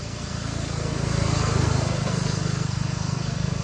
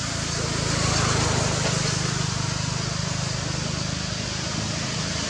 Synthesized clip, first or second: first